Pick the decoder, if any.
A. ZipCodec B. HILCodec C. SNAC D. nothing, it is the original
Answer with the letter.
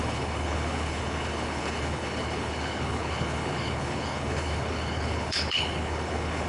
B